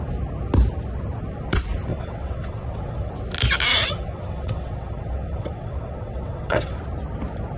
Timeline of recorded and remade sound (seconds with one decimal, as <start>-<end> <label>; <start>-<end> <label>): 0.0-1.9 recorded; 1.9-3.1 remade; 3.1-3.7 recorded; 3.7-6.8 remade; 6.8-7.6 recorded